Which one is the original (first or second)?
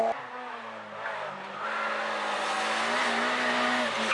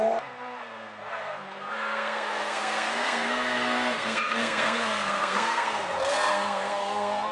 first